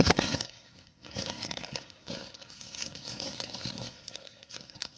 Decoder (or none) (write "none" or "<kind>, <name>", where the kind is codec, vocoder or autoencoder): codec, SNAC